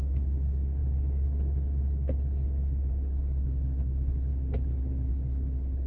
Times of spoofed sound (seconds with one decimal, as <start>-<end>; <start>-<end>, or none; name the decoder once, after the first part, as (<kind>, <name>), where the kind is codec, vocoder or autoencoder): 0.0-5.9 (codec, HILCodec)